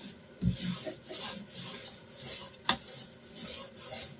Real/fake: real